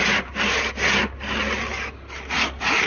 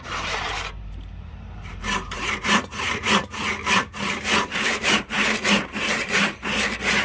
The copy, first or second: second